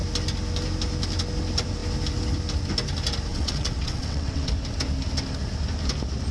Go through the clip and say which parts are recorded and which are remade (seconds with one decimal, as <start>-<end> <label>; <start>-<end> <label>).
0.0-3.3 recorded; 3.3-4.5 remade; 4.5-6.3 recorded